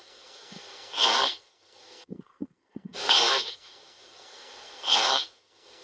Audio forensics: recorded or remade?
remade